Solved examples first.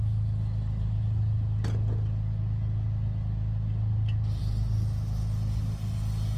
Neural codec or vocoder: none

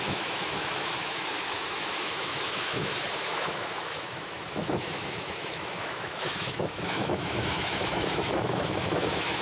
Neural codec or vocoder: autoencoder, DAC-VAE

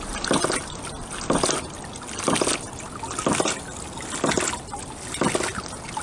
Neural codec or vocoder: none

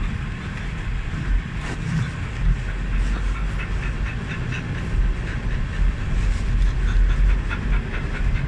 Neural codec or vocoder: none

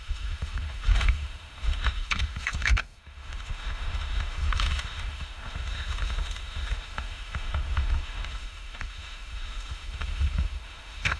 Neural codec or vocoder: autoencoder, DAC-VAE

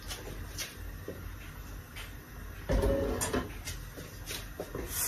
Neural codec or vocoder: none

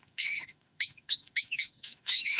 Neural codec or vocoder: autoencoder, DAC-VAE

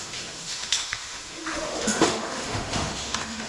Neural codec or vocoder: autoencoder, DAC-VAE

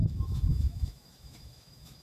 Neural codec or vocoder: autoencoder, DAC-VAE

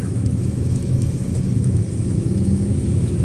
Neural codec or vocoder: autoencoder, DAC-VAE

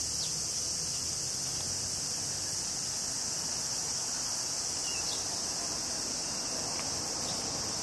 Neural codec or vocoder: none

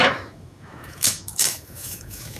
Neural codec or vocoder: autoencoder, DAC-VAE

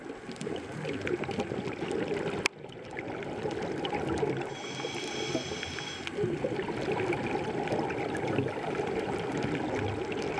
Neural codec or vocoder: none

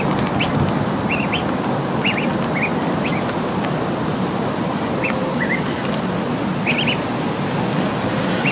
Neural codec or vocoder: none